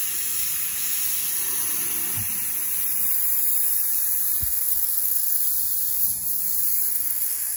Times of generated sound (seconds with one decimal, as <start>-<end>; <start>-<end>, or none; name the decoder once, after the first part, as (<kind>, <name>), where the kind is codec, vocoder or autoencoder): 4.4-5.4 (codec, SNAC); 6.9-7.6